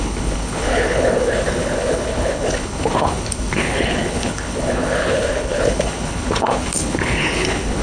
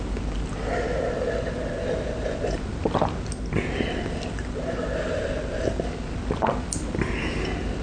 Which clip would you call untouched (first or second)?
second